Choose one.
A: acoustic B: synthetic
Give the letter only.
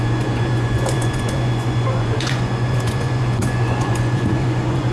B